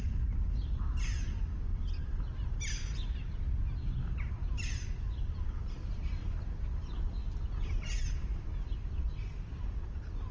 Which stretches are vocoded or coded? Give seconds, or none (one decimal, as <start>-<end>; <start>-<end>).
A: none